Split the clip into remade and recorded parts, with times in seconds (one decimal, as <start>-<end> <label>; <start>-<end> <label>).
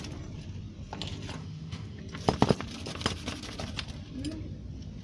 0.0-1.4 recorded; 1.4-2.0 remade; 2.0-5.0 recorded